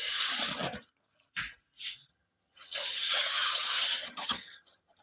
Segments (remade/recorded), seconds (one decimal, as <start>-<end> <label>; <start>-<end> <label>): 0.0-2.1 recorded; 2.1-5.0 remade